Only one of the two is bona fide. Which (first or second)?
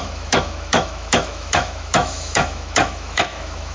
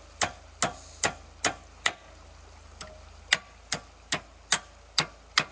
second